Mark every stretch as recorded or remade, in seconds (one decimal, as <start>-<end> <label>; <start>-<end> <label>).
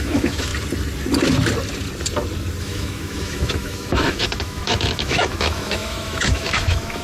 0.0-0.5 remade; 0.5-2.6 recorded; 2.6-7.0 remade